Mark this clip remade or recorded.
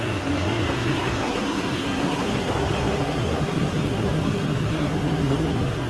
remade